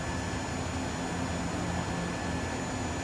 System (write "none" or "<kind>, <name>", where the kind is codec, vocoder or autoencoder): none